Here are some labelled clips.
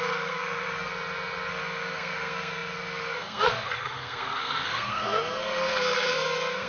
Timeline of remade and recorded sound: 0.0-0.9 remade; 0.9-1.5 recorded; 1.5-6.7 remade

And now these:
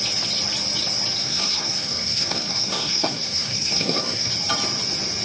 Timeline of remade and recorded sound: 0.0-1.2 recorded; 1.2-4.3 remade; 4.3-5.2 recorded

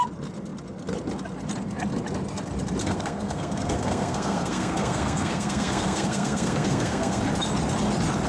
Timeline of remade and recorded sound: 0.0-2.8 recorded; 2.8-7.2 remade; 7.2-8.3 recorded

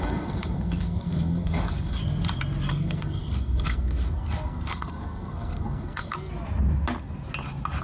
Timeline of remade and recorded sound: 0.0-2.0 remade; 2.0-2.7 recorded; 2.7-6.3 remade; 6.3-7.8 recorded

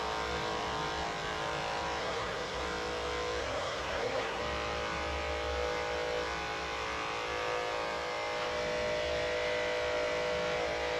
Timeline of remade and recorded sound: 0.0-2.0 recorded; 2.0-2.6 remade; 2.6-3.4 recorded; 3.4-4.4 remade; 4.4-11.0 recorded

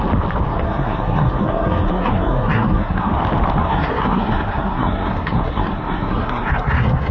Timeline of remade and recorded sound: 0.0-0.5 recorded; 0.5-3.1 remade; 3.1-3.6 recorded; 3.6-7.1 remade

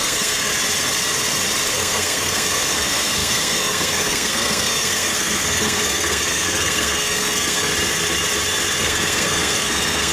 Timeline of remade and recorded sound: 0.0-0.5 remade; 0.5-1.7 recorded; 1.7-7.7 remade; 7.7-8.8 recorded; 8.8-10.1 remade